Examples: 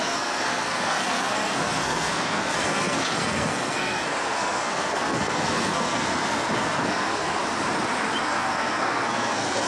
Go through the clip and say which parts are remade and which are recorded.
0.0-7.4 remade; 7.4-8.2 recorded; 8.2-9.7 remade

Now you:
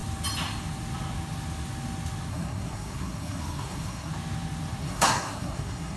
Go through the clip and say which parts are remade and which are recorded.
0.0-2.3 recorded; 2.3-4.1 remade; 4.1-4.8 recorded; 4.8-6.0 remade

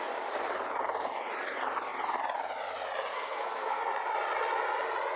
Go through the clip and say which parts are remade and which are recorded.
0.0-3.1 recorded; 3.1-3.8 remade; 3.8-5.2 recorded

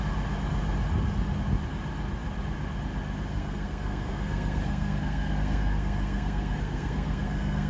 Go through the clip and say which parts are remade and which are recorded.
0.0-3.3 recorded; 3.3-7.7 remade

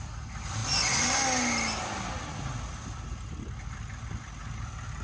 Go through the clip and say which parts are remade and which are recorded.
0.0-5.0 recorded

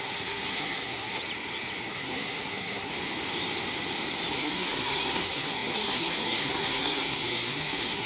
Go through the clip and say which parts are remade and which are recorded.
0.0-1.2 remade; 1.2-1.9 recorded; 1.9-2.9 remade; 2.9-4.3 recorded; 4.3-8.1 remade

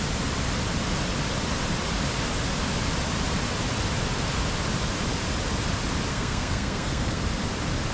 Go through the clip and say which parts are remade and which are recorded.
0.0-6.1 recorded; 6.1-7.2 remade; 7.2-7.9 recorded